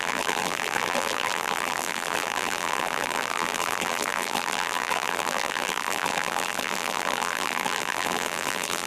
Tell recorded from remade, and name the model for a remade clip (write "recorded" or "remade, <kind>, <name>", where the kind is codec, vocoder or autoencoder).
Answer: remade, vocoder, BigVGAN v2